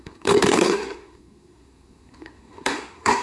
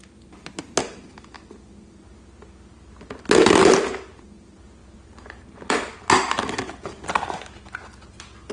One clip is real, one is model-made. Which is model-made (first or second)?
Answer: first